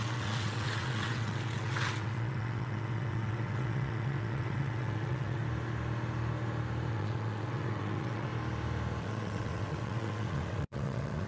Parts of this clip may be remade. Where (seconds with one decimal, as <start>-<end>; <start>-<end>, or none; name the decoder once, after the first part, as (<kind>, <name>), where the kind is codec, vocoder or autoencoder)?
0.0-5.4 (vocoder, WaveNeXt); 6.9-8.3; 9.0-11.3